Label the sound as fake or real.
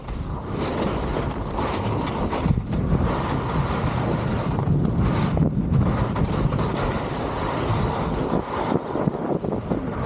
real